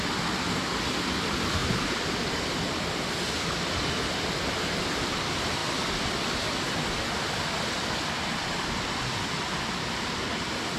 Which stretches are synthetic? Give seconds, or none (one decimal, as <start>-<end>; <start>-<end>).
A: none